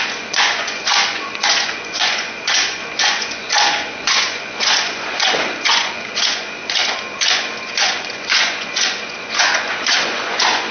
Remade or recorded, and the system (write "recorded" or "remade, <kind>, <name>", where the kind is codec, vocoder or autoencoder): remade, vocoder, Vocos